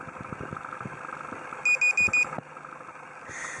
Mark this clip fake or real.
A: real